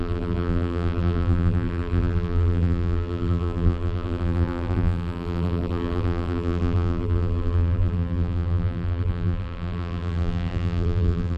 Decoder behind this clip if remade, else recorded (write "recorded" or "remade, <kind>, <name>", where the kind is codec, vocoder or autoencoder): remade, vocoder, BigVGAN v2